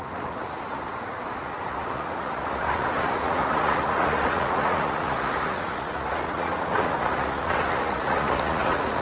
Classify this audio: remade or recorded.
remade